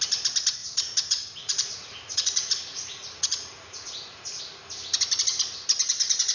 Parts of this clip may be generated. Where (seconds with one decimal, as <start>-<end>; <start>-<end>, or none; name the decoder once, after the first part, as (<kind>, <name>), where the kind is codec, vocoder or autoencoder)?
0.6-4.4 (vocoder, Vocos)